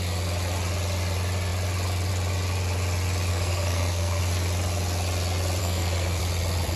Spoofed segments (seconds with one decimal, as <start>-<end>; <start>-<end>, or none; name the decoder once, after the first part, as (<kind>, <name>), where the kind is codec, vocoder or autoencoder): 3.3-4.2 (codec, SNAC); 5.6-6.2